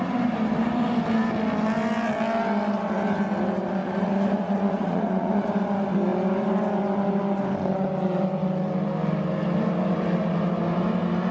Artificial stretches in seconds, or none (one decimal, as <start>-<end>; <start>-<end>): 3.8-5.5